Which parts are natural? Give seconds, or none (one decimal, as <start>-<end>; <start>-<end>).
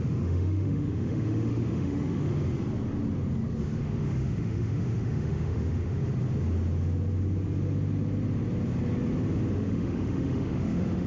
2.3-3.6; 6.0-9.5